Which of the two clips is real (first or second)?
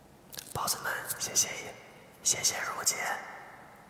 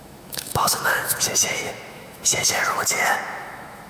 first